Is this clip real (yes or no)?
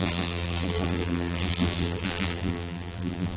no